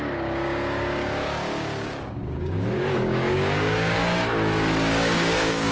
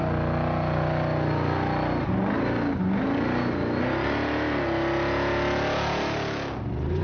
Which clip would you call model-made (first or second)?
first